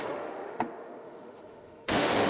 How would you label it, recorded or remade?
remade